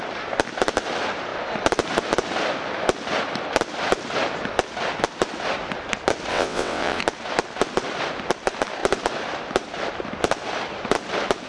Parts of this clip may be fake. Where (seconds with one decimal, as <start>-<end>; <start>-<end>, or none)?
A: 6.3-7.0